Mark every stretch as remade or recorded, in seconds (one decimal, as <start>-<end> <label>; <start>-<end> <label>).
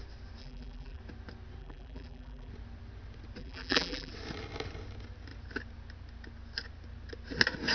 0.0-0.4 recorded; 0.4-1.0 remade; 1.0-1.6 recorded; 1.6-2.5 remade; 2.5-3.4 recorded; 3.4-4.1 remade; 4.1-7.7 recorded